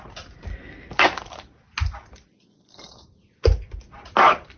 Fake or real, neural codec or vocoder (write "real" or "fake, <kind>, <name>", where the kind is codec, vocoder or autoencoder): real